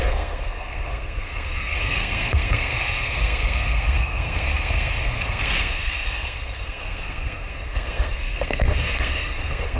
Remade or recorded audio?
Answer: remade